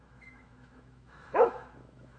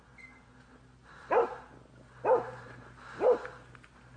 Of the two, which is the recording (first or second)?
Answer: second